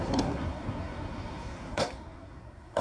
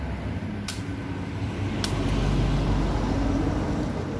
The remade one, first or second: first